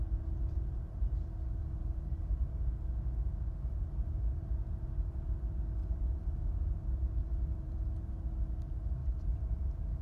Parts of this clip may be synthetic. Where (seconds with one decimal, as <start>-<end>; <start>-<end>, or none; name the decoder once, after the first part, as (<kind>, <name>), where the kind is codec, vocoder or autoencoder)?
1.6-2.4 (vocoder, BigVGAN v2); 5.8-6.4; 7.2-7.9; 9.0-9.6